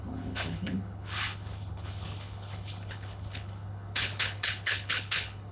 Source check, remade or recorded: remade